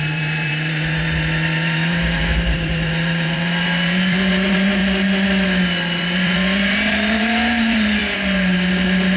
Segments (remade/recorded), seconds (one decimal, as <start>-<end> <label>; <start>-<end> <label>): 0.0-4.8 remade; 4.8-6.0 recorded; 6.0-8.0 remade; 8.0-9.2 recorded